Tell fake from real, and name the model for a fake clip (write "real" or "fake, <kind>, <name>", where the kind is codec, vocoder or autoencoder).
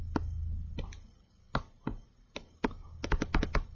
real